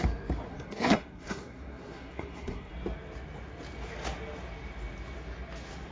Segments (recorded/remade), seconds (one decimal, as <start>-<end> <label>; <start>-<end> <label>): 0.0-0.5 recorded; 0.5-2.7 remade; 2.7-5.9 recorded